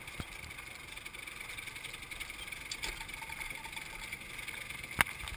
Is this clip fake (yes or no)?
no